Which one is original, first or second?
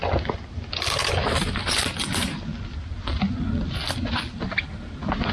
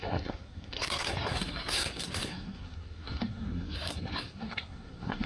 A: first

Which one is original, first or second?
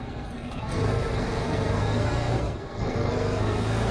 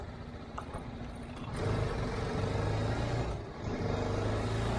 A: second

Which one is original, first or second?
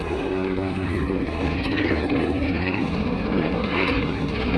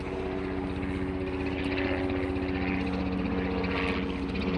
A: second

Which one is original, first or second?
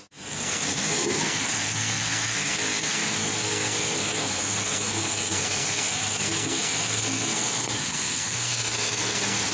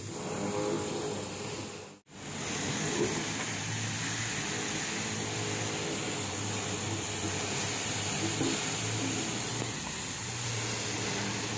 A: second